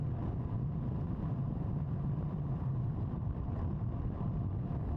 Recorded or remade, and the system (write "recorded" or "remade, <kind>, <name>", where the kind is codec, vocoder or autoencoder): recorded